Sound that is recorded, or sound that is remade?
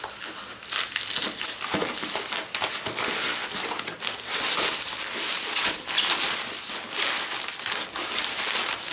recorded